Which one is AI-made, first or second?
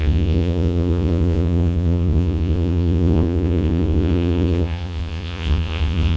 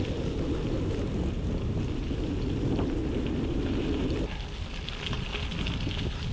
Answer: first